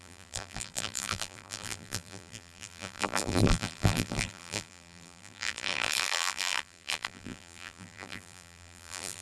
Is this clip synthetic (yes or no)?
yes